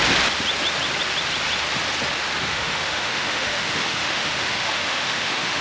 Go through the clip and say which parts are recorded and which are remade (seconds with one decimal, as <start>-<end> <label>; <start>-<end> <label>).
0.0-2.5 recorded; 2.5-5.6 remade